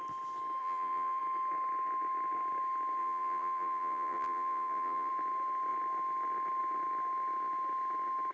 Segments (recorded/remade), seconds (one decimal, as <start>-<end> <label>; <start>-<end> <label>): 0.0-0.6 recorded; 0.6-1.2 remade; 1.2-3.0 recorded; 3.0-5.1 remade; 5.1-8.3 recorded

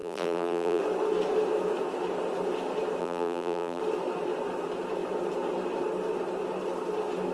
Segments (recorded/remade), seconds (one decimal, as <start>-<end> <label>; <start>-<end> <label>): 0.0-0.8 remade; 0.8-3.0 recorded; 3.0-3.8 remade; 3.8-7.3 recorded

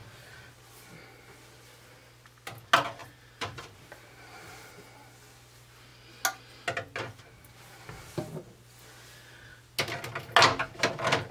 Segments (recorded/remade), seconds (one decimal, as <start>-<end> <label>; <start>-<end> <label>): 0.0-3.0 recorded; 3.0-4.4 remade; 4.4-11.3 recorded

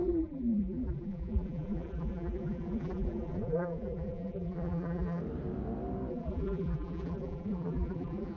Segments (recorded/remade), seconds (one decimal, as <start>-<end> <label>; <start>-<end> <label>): 0.0-5.2 remade; 5.2-6.1 recorded; 6.1-8.4 remade

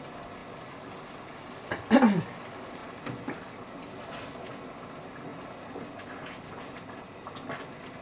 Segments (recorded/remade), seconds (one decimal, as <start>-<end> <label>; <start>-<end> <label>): 0.0-8.0 recorded

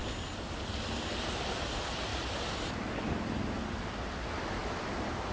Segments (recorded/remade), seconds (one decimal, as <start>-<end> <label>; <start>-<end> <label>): 0.0-2.1 remade; 2.1-3.6 recorded; 3.6-4.6 remade; 4.6-5.3 recorded

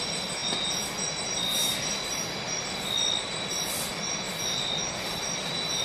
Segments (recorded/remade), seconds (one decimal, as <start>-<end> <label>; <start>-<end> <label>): 0.0-5.8 recorded

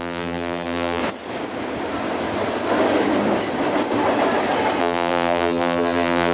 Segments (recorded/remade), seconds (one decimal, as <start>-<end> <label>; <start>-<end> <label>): 0.0-1.0 remade; 1.0-4.8 recorded; 4.8-6.3 remade